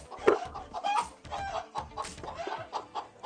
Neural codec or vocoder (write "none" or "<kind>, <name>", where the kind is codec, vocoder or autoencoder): none